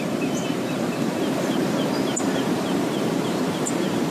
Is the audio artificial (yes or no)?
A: yes